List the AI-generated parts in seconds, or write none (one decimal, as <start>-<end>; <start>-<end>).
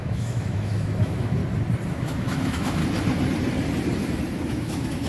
0.0-1.4; 1.9-2.8; 4.4-5.1